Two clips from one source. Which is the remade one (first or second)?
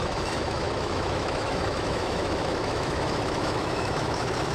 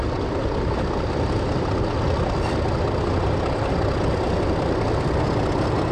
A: first